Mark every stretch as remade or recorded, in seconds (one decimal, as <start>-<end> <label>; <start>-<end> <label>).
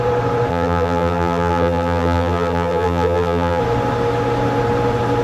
0.0-0.5 recorded; 0.5-3.6 remade; 3.6-5.2 recorded